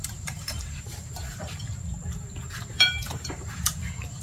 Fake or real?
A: fake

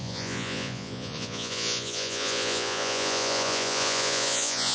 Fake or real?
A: fake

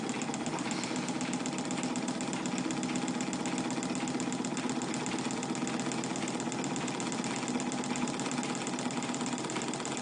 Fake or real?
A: real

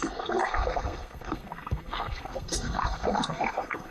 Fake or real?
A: fake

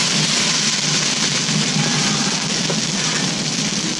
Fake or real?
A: real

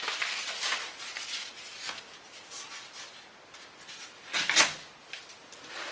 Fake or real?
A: real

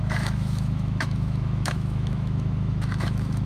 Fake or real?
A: fake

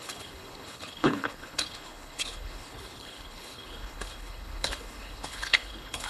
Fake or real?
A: fake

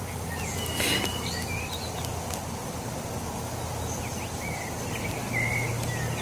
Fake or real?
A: real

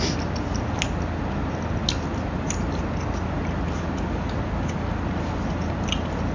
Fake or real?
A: real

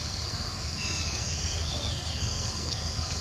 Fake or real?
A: fake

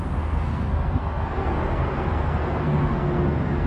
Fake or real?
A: fake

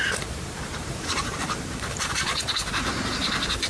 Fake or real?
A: fake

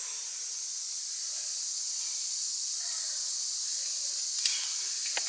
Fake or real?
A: real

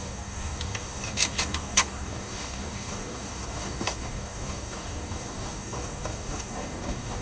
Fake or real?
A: fake